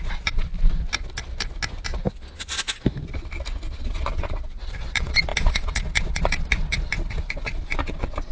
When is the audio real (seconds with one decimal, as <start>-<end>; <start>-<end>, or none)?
0.5-3.8